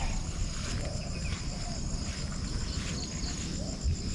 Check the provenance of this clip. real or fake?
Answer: real